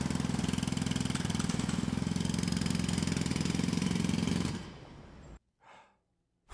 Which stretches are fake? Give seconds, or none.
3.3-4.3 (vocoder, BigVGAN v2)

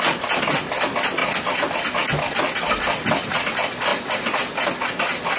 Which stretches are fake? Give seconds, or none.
none

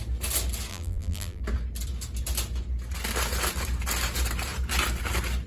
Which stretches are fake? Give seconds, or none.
0.7-1.4 (vocoder, BigVGAN v2)

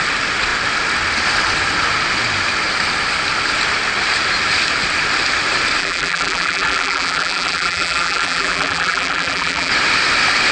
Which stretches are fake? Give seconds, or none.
5.8-9.7 (vocoder, BigVGAN v2)

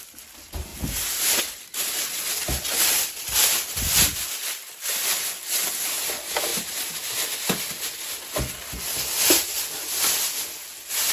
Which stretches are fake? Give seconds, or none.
6.5-7.0 (vocoder, BigVGAN v2)

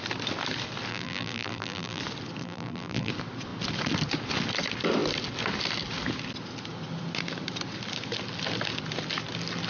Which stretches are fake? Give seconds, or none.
0.9-2.0 (vocoder, BigVGAN v2); 2.4-3.1

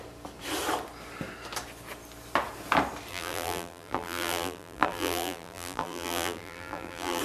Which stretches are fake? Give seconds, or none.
3.1-7.2 (vocoder, BigVGAN v2)

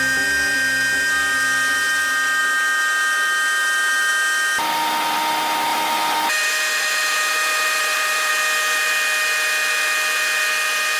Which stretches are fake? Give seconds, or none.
5.7-8.3 (vocoder, BigVGAN v2)